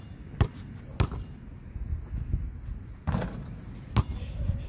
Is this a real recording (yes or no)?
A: yes